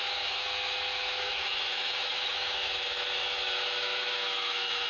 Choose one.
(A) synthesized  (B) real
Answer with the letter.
A